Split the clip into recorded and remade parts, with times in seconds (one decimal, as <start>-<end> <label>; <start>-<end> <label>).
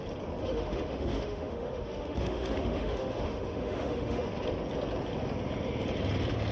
0.0-0.4 recorded; 0.4-4.3 remade; 4.3-6.5 recorded